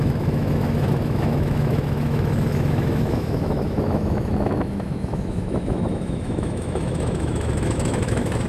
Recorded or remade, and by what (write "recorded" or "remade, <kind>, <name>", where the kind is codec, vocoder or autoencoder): remade, autoencoder, DAC-VAE